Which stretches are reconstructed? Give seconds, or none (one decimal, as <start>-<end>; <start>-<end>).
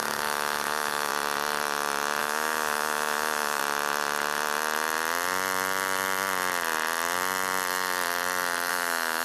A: 0.0-1.1; 2.2-3.6; 8.7-9.2